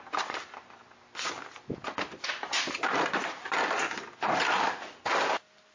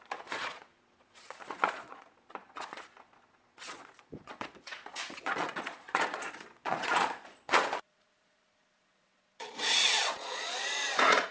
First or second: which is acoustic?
first